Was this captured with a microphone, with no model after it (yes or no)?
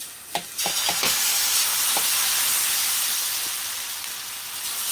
yes